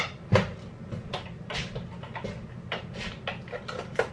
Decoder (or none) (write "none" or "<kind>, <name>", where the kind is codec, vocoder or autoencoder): none